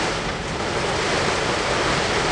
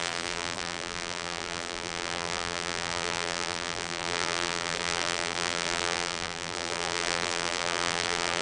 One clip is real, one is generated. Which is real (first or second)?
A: first